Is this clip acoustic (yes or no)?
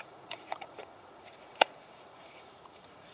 no